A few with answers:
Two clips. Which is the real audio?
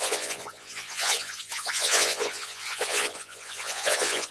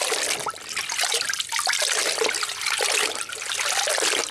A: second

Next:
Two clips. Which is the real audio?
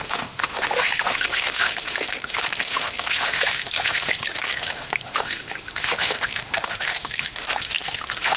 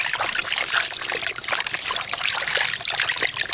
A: second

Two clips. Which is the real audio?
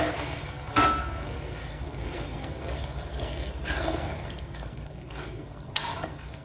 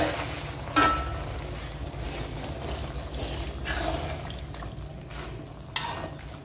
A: second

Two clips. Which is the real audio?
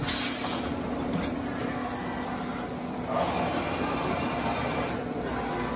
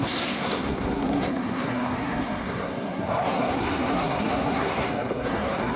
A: first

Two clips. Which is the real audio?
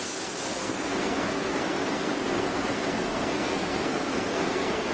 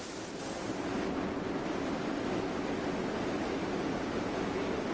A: second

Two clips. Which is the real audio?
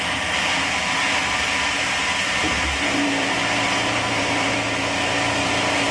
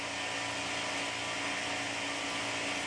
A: second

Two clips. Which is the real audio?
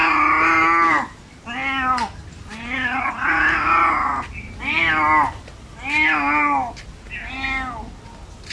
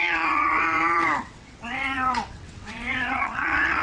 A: first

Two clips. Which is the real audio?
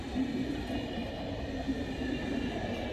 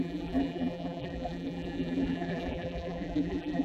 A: first